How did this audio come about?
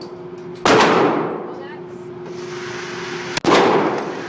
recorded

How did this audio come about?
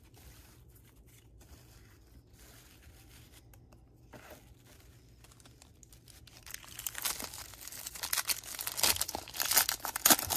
recorded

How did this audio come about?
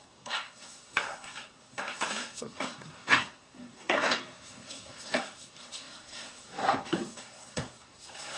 remade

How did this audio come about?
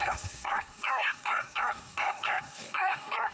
remade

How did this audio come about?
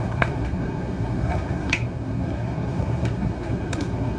remade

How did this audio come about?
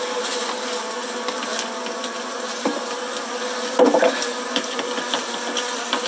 recorded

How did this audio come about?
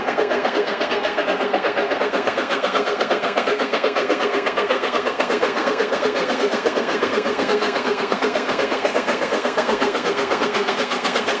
remade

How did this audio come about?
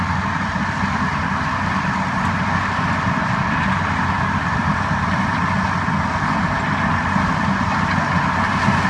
recorded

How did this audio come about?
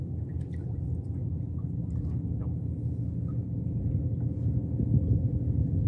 recorded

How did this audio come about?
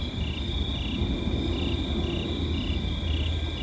recorded